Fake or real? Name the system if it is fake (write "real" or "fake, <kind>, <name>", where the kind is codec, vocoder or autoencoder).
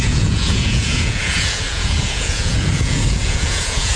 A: fake, vocoder, Vocos